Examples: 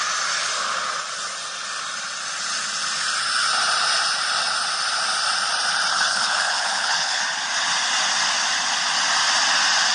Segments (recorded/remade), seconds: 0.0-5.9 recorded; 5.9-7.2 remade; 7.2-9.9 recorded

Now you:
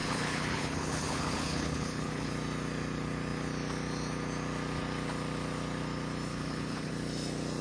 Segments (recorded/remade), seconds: 0.0-2.3 remade; 2.3-6.3 recorded; 6.3-6.9 remade; 6.9-7.6 recorded

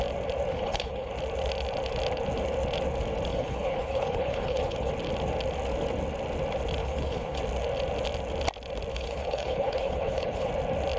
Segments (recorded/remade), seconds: 0.0-0.5 recorded; 0.5-1.1 remade; 1.1-3.3 recorded; 3.3-4.9 remade; 4.9-6.8 recorded; 6.8-7.4 remade; 7.4-8.9 recorded; 8.9-10.5 remade; 10.5-11.0 recorded

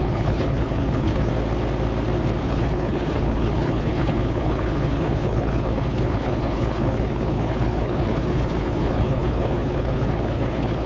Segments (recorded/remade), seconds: 0.0-1.3 remade; 1.3-2.4 recorded; 2.4-10.9 remade

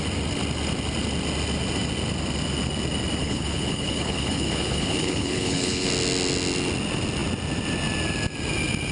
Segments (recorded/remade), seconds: 0.0-3.2 recorded; 3.2-5.9 remade; 5.9-8.9 recorded

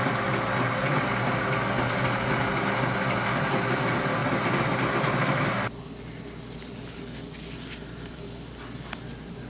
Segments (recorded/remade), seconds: 0.0-9.5 recorded

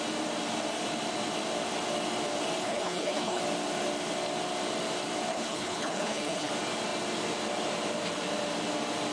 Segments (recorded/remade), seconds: 0.0-2.6 recorded; 2.6-3.4 remade; 3.4-5.3 recorded; 5.3-6.5 remade; 6.5-9.1 recorded

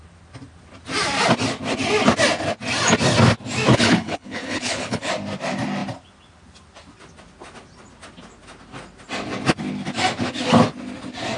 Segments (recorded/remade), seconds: 0.0-3.7 recorded; 3.7-5.1 remade; 5.1-11.4 recorded